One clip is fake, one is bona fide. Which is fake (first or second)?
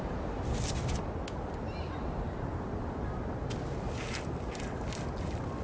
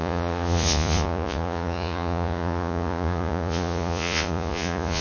second